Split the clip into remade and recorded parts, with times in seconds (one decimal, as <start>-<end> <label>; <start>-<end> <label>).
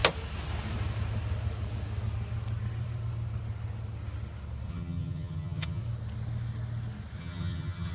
0.0-4.7 recorded; 4.7-5.8 remade; 5.8-7.2 recorded; 7.2-7.9 remade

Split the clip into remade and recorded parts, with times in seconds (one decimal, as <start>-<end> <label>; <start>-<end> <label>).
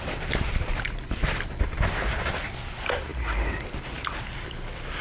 0.0-5.0 recorded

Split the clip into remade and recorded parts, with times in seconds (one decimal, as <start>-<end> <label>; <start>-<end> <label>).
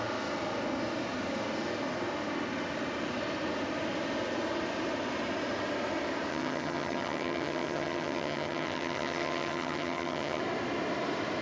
0.0-6.3 recorded; 6.3-10.4 remade; 10.4-11.4 recorded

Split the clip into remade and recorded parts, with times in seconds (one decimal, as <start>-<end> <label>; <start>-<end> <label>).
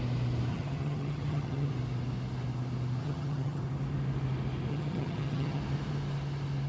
0.0-0.5 recorded; 0.5-1.7 remade; 1.7-3.0 recorded; 3.0-3.6 remade; 3.6-4.7 recorded; 4.7-5.6 remade; 5.6-6.7 recorded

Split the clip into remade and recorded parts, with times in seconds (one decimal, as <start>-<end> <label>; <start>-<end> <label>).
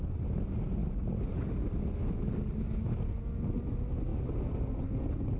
0.0-5.4 recorded